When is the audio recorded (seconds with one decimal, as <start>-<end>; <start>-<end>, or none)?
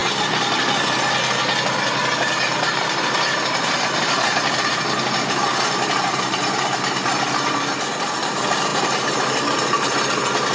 0.0-2.5